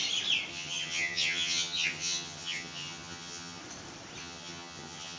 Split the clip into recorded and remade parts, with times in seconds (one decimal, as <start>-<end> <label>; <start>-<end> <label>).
0.0-0.5 recorded; 0.5-3.6 remade; 3.6-4.2 recorded; 4.2-5.2 remade